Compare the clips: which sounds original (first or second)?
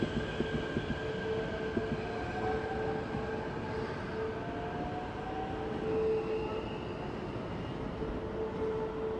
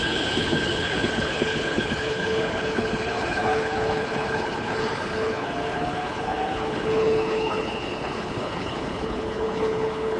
first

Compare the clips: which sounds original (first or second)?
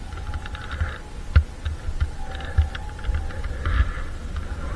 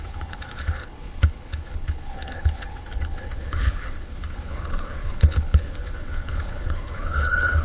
first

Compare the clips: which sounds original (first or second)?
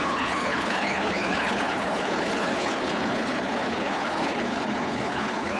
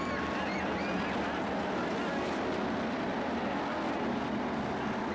second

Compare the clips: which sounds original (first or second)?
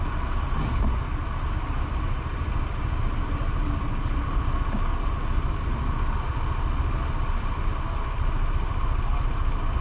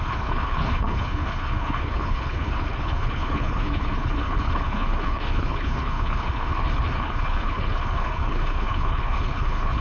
first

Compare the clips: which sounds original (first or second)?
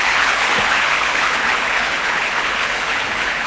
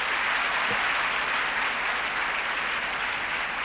second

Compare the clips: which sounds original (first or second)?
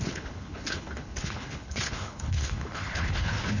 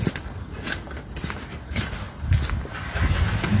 second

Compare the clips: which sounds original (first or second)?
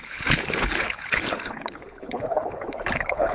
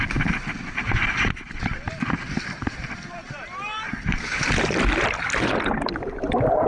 second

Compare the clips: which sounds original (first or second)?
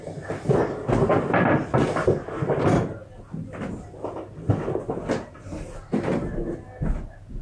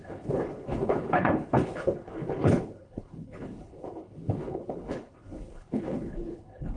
first